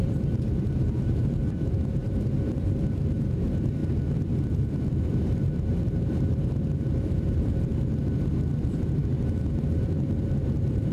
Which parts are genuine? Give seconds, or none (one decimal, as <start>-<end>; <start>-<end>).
7.7-8.6; 9.0-9.5